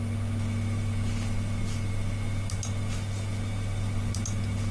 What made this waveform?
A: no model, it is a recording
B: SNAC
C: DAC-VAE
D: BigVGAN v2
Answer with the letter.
A